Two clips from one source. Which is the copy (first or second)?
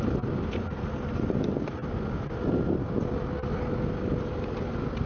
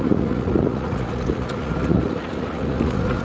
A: second